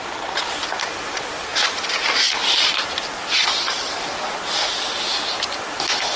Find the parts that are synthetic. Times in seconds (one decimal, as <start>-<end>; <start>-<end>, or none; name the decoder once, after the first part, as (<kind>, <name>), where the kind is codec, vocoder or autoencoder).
none

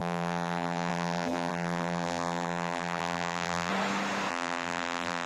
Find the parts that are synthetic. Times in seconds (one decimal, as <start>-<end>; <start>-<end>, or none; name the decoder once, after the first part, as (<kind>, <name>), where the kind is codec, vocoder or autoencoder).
0.0-3.7 (vocoder, BigVGAN v2); 4.3-5.3

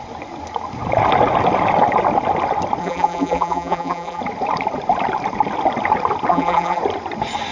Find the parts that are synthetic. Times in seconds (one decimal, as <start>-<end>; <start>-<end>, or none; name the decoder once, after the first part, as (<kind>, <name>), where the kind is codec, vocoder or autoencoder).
2.8-4.2 (vocoder, BigVGAN v2); 6.3-6.8

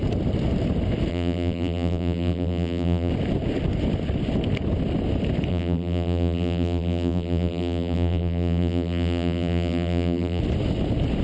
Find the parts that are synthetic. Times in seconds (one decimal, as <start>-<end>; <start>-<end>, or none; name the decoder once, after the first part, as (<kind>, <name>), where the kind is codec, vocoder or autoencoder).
1.1-3.1 (vocoder, BigVGAN v2); 5.5-10.4

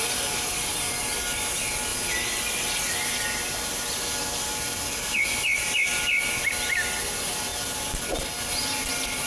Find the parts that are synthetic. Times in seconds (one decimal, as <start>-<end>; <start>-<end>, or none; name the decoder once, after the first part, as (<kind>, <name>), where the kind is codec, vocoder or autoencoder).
none

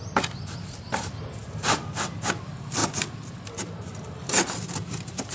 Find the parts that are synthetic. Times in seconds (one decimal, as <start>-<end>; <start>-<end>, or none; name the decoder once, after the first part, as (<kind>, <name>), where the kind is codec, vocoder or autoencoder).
0.0-1.4 (vocoder, BigVGAN v2); 2.0-5.3

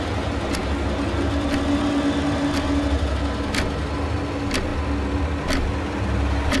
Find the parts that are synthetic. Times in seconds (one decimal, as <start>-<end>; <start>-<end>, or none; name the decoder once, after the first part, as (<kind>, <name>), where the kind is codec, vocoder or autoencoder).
none